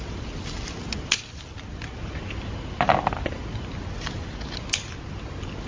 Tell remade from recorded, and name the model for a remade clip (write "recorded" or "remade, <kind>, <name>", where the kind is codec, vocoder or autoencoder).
recorded